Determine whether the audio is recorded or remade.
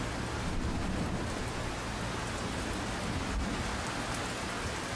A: recorded